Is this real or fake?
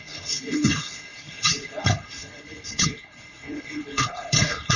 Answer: fake